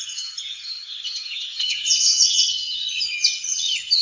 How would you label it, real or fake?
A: fake